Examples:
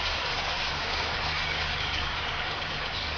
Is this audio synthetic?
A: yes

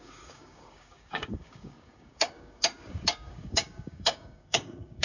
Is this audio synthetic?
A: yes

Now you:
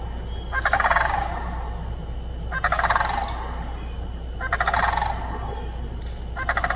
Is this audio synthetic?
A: no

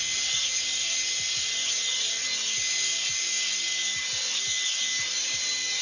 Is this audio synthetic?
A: no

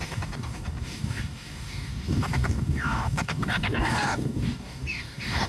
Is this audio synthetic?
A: yes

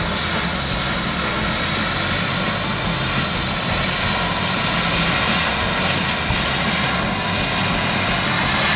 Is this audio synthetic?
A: no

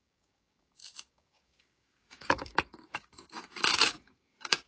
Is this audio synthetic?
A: yes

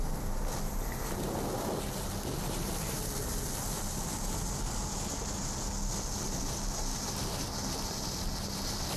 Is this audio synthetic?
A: no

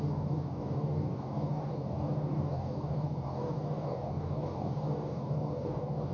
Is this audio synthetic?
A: yes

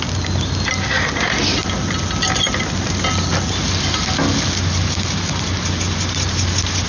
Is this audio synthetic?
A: no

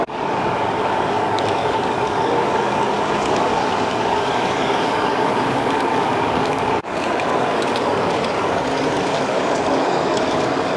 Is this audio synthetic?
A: yes